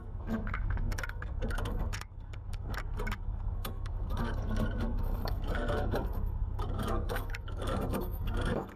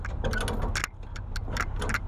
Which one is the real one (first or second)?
second